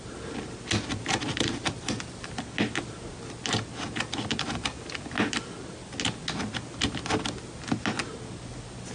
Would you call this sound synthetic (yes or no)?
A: no